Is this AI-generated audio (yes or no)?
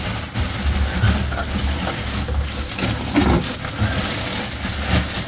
no